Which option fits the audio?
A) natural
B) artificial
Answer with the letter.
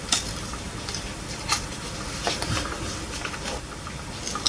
A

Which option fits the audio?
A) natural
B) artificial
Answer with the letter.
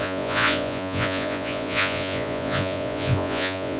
B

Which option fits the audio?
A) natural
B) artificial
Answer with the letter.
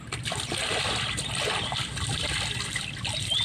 A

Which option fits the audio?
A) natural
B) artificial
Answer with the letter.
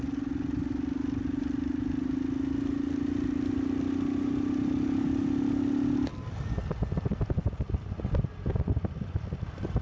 A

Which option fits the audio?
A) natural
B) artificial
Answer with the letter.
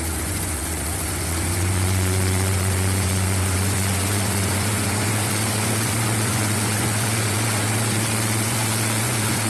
B